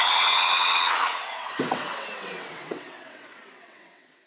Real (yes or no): no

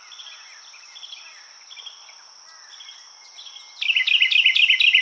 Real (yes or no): yes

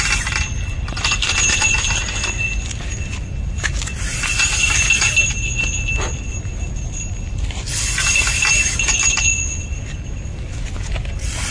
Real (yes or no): yes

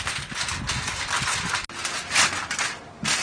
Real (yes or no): yes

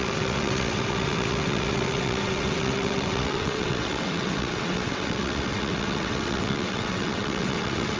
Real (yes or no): no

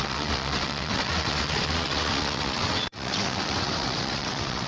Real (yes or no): no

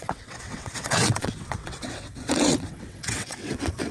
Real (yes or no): no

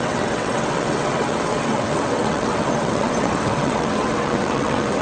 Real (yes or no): no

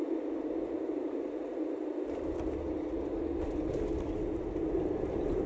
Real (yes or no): yes